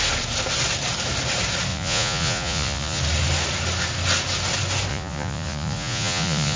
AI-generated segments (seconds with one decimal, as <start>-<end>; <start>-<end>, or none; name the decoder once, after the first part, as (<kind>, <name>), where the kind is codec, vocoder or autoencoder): 1.7-3.0 (vocoder, Vocos); 4.9-6.6